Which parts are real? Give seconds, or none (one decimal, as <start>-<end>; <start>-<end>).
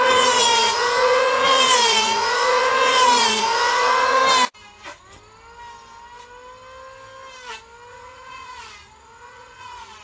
4.2-7.9